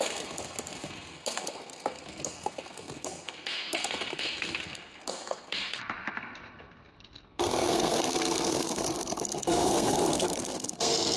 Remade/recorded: remade